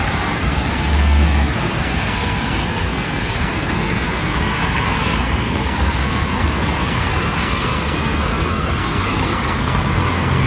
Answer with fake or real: fake